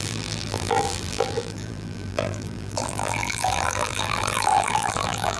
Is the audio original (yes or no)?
no